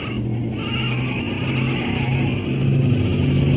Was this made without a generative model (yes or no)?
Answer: yes